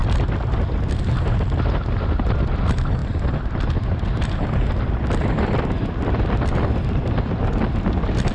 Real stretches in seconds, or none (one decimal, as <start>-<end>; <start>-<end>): 0.8-3.0; 7.5-8.3